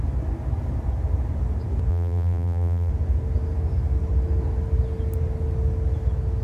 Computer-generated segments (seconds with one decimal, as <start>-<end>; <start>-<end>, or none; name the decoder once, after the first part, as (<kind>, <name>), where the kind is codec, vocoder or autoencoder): 1.9-2.9 (vocoder, BigVGAN v2)